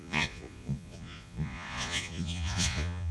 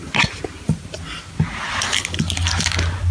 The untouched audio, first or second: second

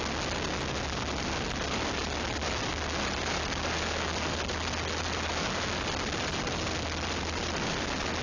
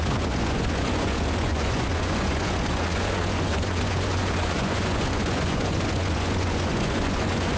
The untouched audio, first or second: first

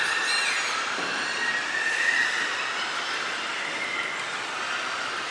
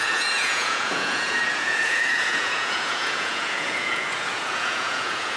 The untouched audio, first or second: first